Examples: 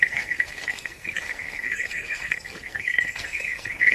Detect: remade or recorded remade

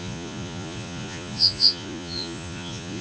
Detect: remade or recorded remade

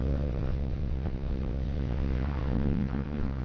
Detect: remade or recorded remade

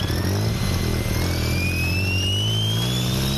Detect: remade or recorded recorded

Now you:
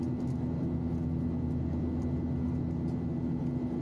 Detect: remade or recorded recorded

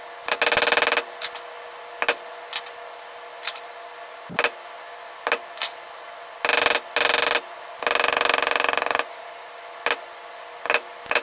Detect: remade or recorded recorded